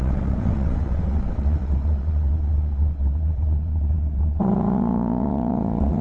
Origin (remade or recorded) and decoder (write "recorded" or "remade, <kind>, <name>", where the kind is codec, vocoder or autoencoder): remade, vocoder, WaveNeXt